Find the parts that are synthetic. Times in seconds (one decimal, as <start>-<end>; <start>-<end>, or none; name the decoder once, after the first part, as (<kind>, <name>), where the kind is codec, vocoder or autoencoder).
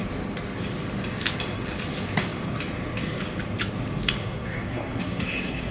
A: 4.2-5.7 (codec, SNAC)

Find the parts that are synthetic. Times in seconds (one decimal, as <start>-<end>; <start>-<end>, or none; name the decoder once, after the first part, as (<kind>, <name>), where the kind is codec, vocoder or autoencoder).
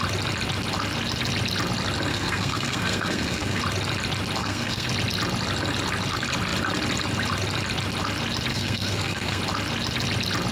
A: 2.1-3.6 (codec, SNAC); 4.4-4.9; 8.5-9.4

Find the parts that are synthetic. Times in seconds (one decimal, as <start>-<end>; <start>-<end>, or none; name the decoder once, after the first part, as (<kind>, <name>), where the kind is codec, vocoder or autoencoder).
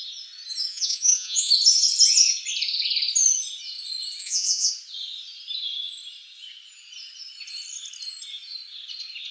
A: 0.7-1.5 (vocoder, Vocos); 4.2-4.7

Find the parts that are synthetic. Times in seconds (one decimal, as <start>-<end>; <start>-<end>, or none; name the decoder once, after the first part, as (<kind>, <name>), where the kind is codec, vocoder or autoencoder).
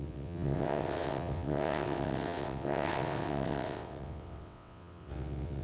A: 0.0-5.6 (vocoder, WaveNeXt)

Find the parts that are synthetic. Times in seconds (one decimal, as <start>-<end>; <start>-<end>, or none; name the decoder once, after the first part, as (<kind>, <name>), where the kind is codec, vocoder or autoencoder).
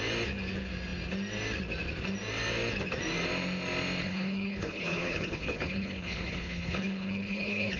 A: 4.0-7.8 (codec, HILCodec)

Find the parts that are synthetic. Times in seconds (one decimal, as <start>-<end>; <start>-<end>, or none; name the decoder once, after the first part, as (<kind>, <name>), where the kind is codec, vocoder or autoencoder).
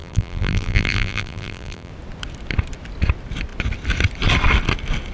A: 0.0-1.9 (vocoder, BigVGAN v2)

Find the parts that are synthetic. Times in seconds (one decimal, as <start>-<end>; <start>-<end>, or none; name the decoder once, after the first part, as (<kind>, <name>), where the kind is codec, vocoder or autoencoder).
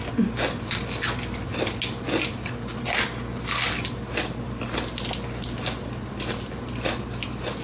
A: none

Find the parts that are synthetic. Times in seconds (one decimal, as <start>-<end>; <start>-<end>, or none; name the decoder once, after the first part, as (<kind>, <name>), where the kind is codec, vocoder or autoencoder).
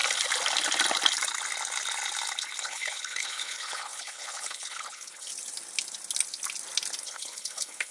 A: 2.6-5.3 (codec, HILCodec); 7.0-7.9